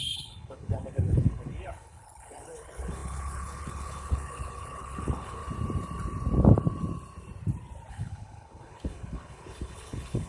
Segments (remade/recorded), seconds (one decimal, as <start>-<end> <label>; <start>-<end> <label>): 0.0-5.4 remade; 5.4-7.9 recorded; 7.9-10.3 remade